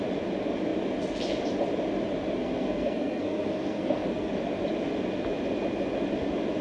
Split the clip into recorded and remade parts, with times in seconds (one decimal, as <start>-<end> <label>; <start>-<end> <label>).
0.0-2.4 recorded; 2.4-4.3 remade; 4.3-6.6 recorded